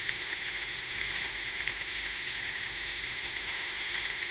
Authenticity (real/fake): fake